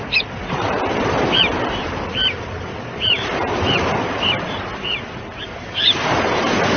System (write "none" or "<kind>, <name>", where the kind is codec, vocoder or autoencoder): vocoder, BigVGAN v2